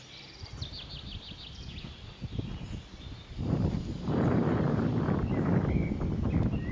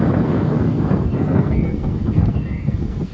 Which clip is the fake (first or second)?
second